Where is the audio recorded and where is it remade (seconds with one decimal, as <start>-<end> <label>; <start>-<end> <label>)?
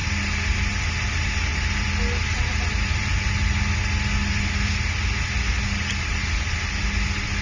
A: 0.0-7.4 recorded